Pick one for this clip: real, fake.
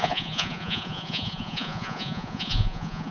fake